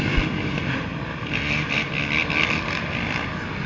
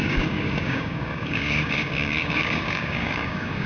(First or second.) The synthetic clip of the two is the second